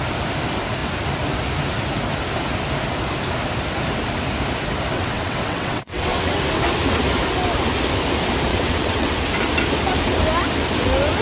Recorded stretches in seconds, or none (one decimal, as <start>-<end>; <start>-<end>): 0.0-4.9; 6.4-8.5; 9.1-11.2